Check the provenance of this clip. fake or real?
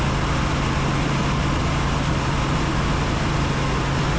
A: real